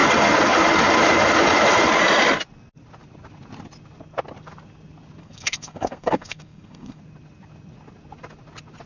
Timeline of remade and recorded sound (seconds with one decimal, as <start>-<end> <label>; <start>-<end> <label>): 0.0-5.2 recorded; 5.2-7.0 remade; 7.0-8.9 recorded